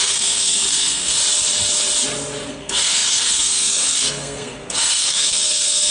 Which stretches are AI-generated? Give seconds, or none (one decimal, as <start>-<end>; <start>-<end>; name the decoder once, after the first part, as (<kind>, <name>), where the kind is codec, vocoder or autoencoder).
0.0-1.2 (codec, SNAC); 2.5-5.9